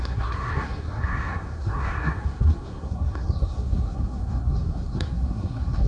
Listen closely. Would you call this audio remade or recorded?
remade